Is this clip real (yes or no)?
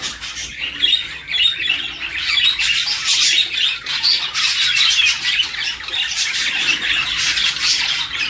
yes